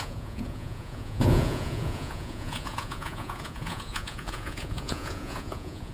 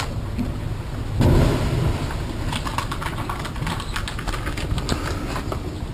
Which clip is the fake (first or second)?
first